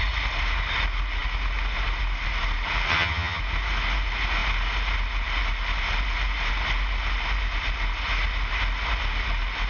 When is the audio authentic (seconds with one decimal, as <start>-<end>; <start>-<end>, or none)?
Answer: 0.0-2.9; 3.4-9.7